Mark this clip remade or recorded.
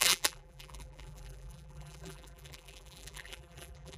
remade